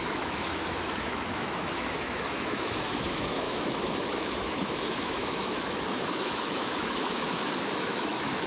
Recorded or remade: remade